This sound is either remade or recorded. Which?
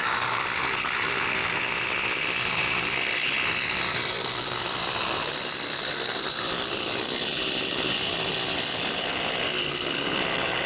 recorded